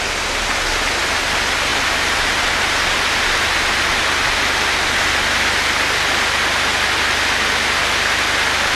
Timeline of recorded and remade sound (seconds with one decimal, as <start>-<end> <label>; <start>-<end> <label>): 0.0-8.8 recorded